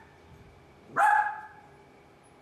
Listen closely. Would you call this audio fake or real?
real